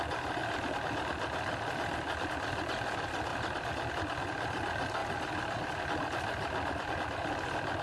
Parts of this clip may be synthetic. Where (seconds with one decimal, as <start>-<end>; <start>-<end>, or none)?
none